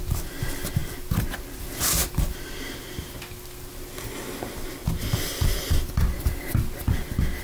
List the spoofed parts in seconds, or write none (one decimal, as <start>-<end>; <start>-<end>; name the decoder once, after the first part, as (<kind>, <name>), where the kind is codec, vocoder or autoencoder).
none